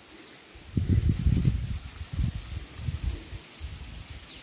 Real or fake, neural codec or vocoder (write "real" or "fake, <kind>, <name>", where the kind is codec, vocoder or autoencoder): real